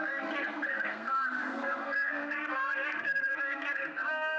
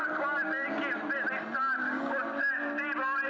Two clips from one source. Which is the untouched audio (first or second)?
second